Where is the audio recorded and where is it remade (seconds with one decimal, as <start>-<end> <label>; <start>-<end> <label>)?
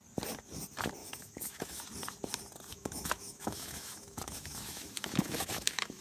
0.0-1.0 recorded; 1.0-1.8 remade; 1.8-2.7 recorded; 2.7-6.0 remade